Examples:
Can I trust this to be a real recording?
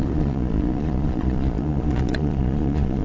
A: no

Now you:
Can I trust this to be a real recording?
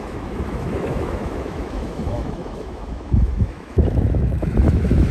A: no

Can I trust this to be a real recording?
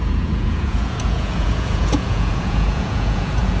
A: no